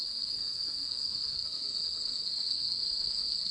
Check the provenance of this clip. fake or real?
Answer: fake